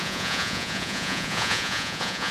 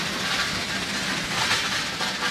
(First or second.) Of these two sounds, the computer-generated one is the first